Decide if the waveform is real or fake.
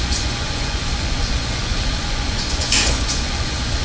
fake